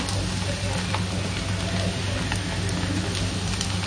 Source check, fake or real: real